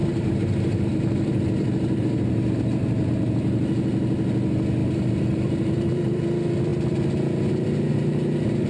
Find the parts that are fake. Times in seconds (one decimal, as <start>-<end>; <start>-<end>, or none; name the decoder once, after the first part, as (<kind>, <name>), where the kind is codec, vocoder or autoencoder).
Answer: 0.0-2.6 (vocoder, BigVGAN v2); 4.8-6.2